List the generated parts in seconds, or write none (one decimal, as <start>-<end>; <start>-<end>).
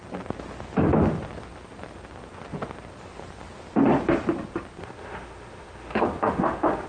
4.8-6.9